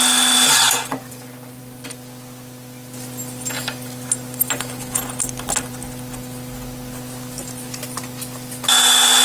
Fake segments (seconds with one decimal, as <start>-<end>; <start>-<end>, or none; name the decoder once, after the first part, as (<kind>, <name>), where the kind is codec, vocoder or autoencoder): none